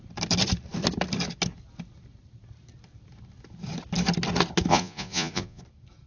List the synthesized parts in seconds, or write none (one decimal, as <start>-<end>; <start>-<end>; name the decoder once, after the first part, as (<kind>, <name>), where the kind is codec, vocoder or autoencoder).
4.7-5.6 (vocoder, Vocos)